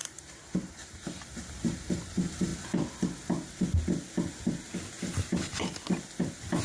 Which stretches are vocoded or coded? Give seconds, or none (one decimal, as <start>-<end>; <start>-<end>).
0.0-2.5